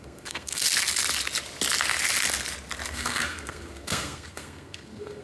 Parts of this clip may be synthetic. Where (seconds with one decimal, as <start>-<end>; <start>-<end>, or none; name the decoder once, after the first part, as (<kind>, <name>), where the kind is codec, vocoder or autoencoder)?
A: 0.0-0.7 (codec, SNAC); 2.9-5.2